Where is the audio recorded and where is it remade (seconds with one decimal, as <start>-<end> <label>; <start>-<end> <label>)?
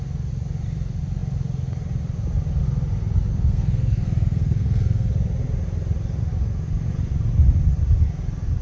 0.0-3.3 recorded; 3.3-5.1 remade; 5.1-8.6 recorded